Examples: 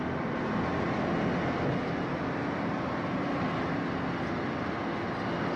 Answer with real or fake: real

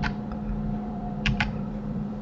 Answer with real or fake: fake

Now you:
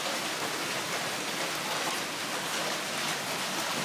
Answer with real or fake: real